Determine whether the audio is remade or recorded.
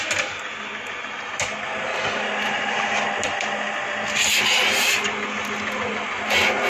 recorded